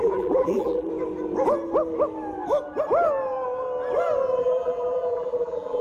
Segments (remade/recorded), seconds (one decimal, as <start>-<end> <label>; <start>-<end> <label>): 0.0-0.9 remade; 0.9-4.4 recorded; 4.4-5.8 remade